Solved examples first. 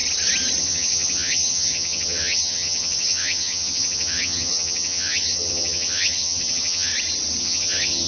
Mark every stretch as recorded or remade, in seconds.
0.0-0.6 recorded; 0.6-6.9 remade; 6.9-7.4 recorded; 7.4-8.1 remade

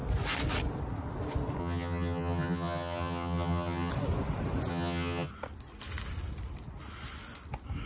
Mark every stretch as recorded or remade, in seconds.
0.0-1.6 recorded; 1.6-3.9 remade; 3.9-4.7 recorded; 4.7-5.3 remade; 5.3-7.9 recorded